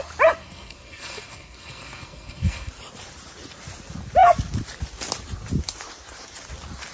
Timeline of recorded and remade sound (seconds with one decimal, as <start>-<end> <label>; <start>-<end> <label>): 0.0-0.4 recorded; 0.4-2.7 remade; 2.7-6.9 recorded